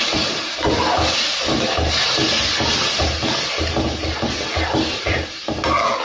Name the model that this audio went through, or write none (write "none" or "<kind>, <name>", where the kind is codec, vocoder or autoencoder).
none